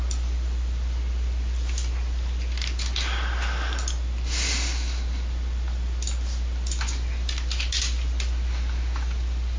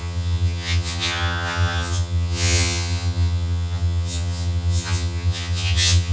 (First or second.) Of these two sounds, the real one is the first